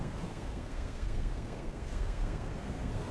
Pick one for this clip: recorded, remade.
remade